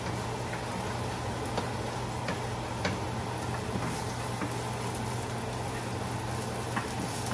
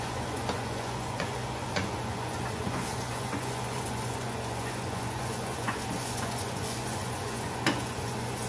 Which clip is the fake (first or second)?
second